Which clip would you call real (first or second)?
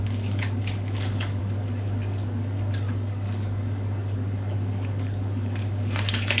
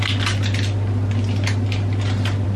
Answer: second